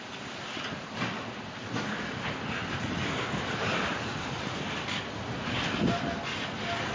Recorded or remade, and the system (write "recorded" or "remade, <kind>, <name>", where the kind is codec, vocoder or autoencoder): recorded